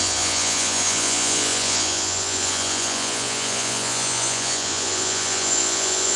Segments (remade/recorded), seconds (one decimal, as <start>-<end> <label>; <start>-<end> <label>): 0.0-6.2 remade